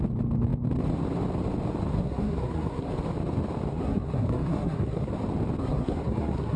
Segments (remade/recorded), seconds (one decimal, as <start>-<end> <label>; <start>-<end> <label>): 0.0-1.9 recorded; 1.9-2.9 remade; 2.9-3.7 recorded; 3.7-5.1 remade; 5.1-5.6 recorded; 5.6-6.6 remade